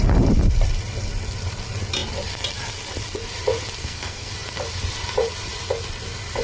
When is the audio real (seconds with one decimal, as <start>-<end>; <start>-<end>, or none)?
0.0-3.8; 4.3-6.4